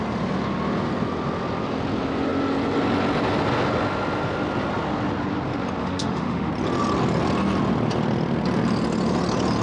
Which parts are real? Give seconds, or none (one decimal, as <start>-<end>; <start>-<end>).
0.0-5.8; 6.5-9.6